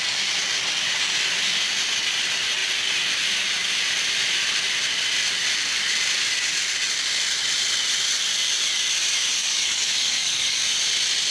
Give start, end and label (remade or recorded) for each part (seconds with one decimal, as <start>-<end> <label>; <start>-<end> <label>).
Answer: 0.0-9.4 recorded; 9.4-10.6 remade; 10.6-11.3 recorded